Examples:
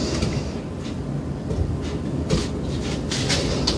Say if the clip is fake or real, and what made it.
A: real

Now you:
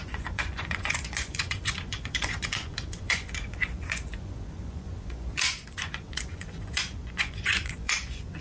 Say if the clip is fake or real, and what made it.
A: fake, vocoder, Vocos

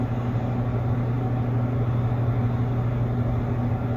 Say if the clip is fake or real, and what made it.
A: real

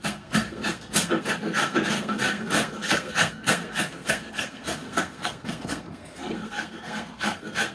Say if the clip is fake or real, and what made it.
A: fake, codec, SNAC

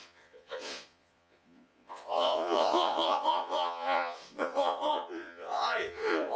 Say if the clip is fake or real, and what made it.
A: fake, vocoder, Vocos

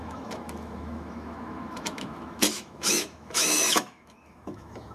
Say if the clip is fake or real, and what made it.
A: fake, autoencoder, DAC-VAE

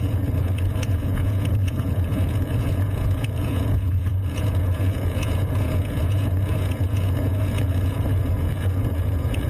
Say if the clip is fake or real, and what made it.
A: fake, vocoder, Vocos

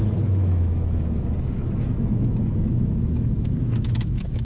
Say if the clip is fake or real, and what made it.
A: fake, autoencoder, DAC-VAE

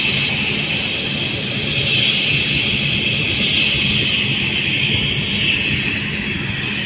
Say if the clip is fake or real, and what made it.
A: real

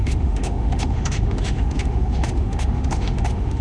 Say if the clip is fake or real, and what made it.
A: fake, autoencoder, DAC-VAE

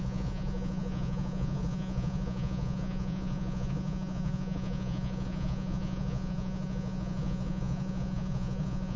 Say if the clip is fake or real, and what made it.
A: fake, vocoder, Vocos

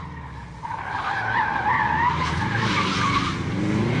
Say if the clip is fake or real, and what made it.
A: real